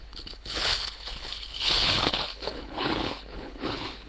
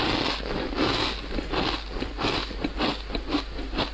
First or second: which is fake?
first